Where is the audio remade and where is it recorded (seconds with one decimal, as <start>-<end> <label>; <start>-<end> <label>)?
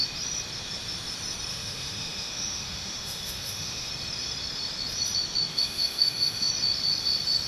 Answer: 0.0-1.5 recorded; 1.5-3.9 remade; 3.9-5.5 recorded; 5.5-6.5 remade; 6.5-7.5 recorded